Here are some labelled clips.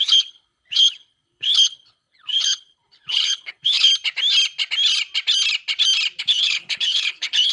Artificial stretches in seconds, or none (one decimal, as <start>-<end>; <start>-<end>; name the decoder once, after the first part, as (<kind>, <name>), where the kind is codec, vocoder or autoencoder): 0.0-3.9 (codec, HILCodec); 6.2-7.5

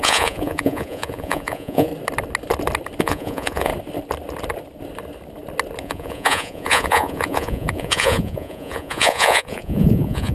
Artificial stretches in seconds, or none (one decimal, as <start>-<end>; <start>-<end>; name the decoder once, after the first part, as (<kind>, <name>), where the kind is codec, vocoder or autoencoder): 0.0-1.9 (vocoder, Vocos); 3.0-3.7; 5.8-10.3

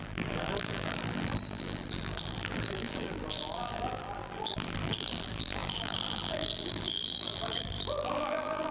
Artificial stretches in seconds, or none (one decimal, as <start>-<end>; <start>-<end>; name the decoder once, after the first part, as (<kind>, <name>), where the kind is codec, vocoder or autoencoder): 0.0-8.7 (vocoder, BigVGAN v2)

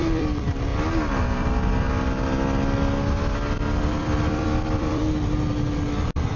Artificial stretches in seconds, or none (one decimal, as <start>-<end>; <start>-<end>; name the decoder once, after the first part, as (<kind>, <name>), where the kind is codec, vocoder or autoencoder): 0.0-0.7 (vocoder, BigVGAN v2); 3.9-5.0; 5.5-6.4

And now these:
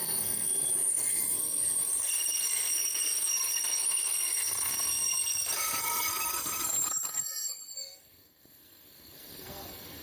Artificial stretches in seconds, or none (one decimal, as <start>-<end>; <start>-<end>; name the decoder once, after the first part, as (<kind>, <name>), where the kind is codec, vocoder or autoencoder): 0.0-10.0 (codec, SNAC)